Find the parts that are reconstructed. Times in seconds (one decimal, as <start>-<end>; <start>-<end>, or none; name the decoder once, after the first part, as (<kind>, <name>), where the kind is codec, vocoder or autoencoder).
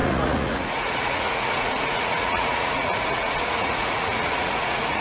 0.0-5.0 (vocoder, Vocos)